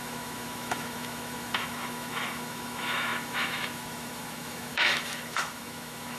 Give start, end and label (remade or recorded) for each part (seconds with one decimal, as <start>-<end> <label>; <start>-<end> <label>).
0.0-6.2 remade